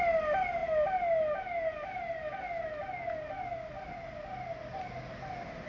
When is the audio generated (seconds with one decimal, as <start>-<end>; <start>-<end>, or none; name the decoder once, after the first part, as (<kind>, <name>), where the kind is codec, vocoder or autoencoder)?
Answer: none